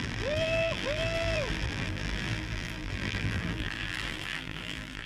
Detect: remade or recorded remade